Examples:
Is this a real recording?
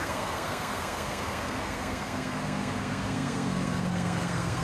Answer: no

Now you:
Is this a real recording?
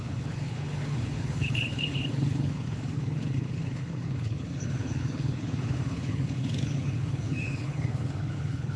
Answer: no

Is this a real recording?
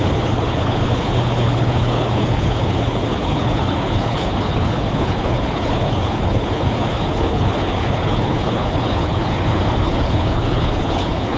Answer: no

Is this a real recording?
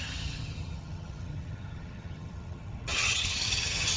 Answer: no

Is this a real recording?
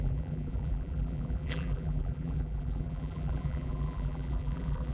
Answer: no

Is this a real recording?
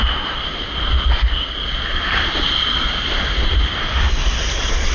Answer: yes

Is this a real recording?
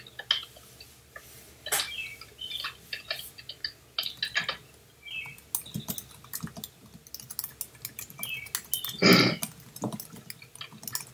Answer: yes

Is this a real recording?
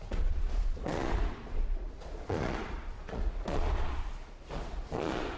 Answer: no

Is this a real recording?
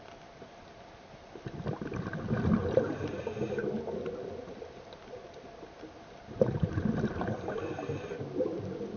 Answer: yes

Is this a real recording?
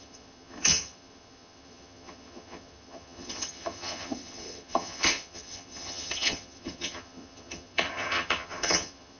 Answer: no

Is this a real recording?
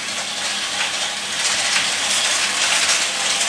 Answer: yes